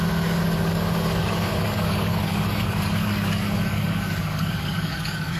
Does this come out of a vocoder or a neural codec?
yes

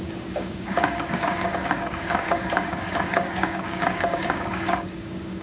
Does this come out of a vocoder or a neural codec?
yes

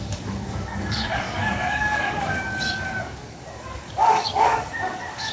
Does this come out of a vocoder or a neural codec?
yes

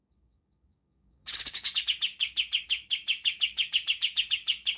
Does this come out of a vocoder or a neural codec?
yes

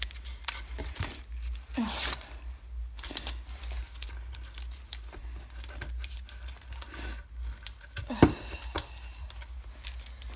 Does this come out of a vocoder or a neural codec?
no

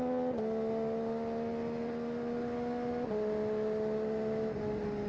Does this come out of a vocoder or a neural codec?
no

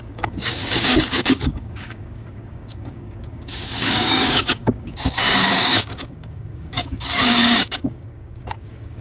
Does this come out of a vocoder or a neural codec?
yes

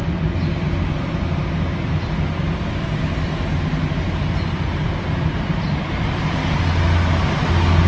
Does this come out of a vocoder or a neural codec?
no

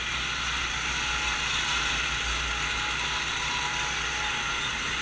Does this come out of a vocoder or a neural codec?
no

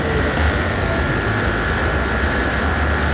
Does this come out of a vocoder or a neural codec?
no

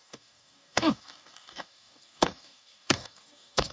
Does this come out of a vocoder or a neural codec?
yes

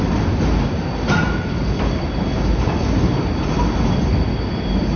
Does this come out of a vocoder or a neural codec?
no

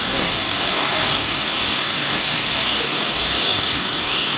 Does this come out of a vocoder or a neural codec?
yes